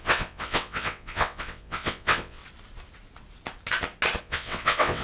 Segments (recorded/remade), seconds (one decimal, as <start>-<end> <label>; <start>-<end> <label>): 0.0-2.4 remade; 2.4-4.2 recorded; 4.2-5.0 remade